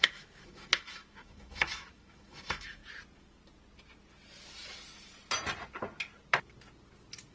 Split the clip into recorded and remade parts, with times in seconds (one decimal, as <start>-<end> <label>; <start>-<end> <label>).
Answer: 0.0-2.8 remade; 2.8-7.3 recorded